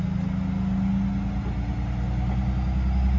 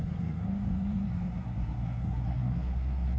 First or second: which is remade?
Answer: second